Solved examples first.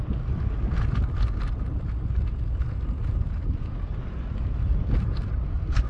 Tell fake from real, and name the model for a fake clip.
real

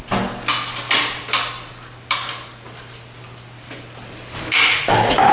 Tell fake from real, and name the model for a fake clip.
real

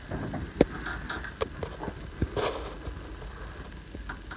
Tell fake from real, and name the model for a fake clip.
real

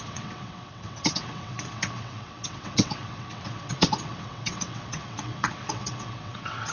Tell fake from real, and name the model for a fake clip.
fake, vocoder, WaveNeXt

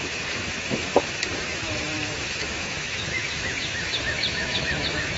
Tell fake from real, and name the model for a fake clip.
fake, autoencoder, DAC-VAE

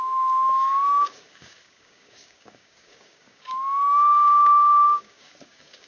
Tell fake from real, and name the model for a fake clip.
fake, codec, DAC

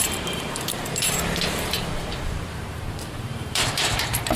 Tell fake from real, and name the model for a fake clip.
fake, vocoder, BigVGAN v2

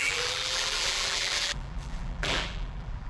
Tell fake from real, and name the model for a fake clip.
fake, vocoder, BigVGAN v2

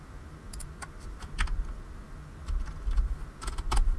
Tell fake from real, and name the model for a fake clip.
real